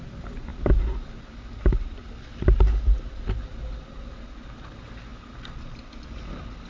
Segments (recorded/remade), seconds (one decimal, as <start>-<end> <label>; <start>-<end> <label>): 0.0-6.7 recorded